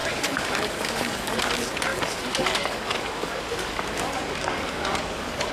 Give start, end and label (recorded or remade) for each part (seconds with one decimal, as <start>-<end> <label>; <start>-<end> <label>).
0.0-1.4 remade; 1.4-1.9 recorded; 1.9-5.5 remade